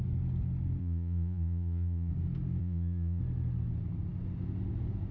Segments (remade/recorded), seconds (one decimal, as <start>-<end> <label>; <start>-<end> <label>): 0.0-0.8 recorded; 0.8-2.1 remade; 2.1-2.6 recorded; 2.6-3.2 remade; 3.2-5.1 recorded